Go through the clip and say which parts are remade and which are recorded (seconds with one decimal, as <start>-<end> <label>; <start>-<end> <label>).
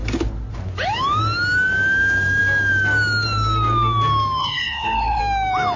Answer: 0.0-4.4 recorded; 4.4-5.2 remade; 5.2-5.8 recorded